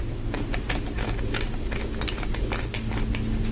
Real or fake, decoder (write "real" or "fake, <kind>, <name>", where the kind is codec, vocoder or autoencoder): real